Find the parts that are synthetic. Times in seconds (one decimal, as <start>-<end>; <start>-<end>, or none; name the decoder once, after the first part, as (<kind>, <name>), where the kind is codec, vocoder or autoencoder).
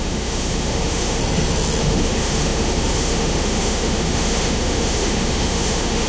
0.0-1.2 (autoencoder, DAC-VAE); 1.8-6.1